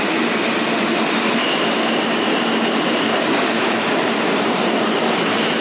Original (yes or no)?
no